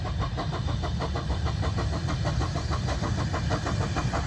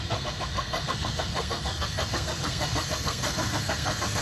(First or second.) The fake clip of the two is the second